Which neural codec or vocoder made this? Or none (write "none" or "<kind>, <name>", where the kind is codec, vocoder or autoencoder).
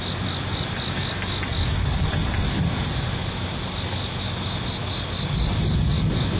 none